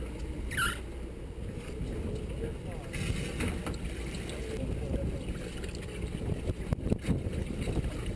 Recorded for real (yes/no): yes